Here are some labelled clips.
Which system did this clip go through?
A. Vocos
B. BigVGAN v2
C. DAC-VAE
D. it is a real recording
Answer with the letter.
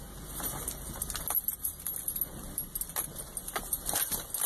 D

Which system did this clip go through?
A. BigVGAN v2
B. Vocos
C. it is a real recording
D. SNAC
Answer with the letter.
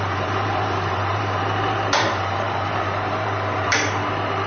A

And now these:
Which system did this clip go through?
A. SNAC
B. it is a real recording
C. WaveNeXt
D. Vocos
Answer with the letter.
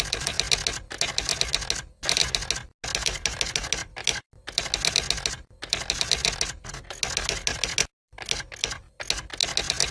B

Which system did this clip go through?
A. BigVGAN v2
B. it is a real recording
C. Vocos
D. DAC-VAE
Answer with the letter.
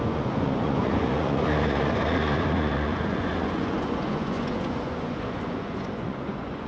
C